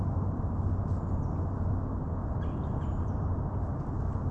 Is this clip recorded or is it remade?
recorded